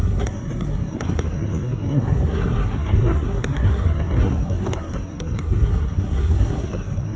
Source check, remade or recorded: remade